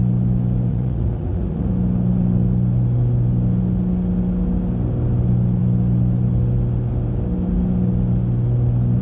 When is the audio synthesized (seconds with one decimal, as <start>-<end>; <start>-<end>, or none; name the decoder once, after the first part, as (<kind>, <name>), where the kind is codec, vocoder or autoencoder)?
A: 0.7-1.7 (vocoder, Vocos)